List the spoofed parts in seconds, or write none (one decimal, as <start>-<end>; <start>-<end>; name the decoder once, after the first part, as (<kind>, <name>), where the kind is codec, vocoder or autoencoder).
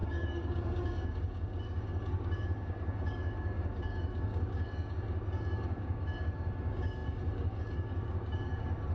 0.0-8.9 (codec, DAC)